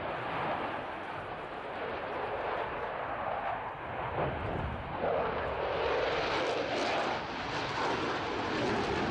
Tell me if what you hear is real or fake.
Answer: real